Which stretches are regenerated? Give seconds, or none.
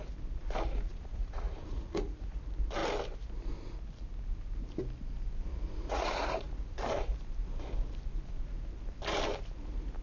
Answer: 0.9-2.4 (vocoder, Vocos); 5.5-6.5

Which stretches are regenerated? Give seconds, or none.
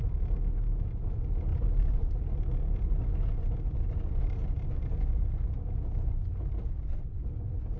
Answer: none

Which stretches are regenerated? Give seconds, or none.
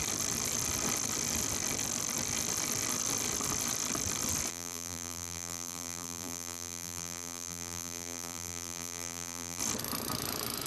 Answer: 4.5-9.6 (vocoder, BigVGAN v2)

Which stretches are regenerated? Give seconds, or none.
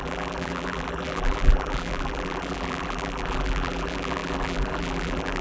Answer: 0.0-5.4 (vocoder, BigVGAN v2)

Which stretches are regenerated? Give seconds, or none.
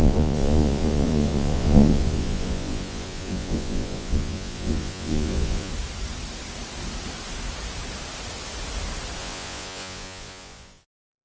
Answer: 0.0-5.7 (vocoder, Vocos); 9.2-11.2